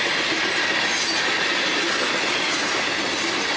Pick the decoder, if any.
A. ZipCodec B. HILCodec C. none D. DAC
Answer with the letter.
C